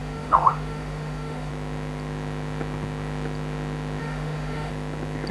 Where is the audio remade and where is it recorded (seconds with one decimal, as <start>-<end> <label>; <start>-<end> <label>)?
0.0-1.5 remade; 1.5-4.0 recorded; 4.0-4.7 remade; 4.7-5.3 recorded